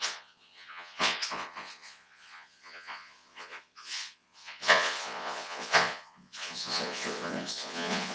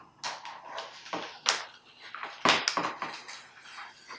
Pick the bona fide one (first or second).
second